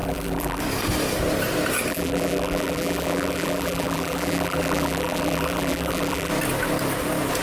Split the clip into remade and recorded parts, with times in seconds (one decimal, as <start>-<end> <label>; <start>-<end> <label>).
0.0-0.6 remade; 0.6-1.9 recorded; 1.9-6.3 remade; 6.3-7.4 recorded